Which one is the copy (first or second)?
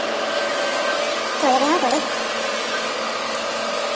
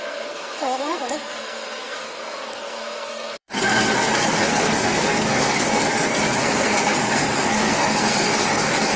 second